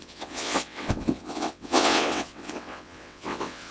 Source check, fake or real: fake